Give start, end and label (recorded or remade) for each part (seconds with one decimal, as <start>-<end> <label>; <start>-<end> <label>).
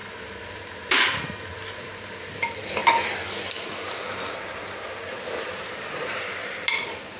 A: 0.0-1.5 recorded; 1.5-2.8 remade; 2.8-5.4 recorded; 5.4-7.2 remade